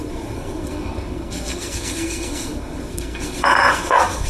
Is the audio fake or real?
fake